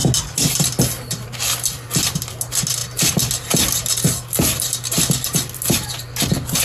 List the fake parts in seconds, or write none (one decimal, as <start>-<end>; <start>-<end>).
none